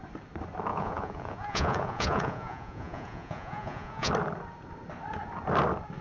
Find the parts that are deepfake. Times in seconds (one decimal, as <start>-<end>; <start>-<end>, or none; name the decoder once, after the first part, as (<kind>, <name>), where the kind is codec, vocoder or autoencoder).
0.7-4.1 (vocoder, Vocos)